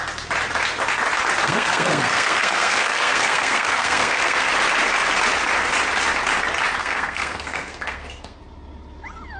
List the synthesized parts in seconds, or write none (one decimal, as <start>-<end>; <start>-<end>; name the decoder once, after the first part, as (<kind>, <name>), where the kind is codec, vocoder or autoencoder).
1.4-4.5 (codec, SNAC); 6.8-8.4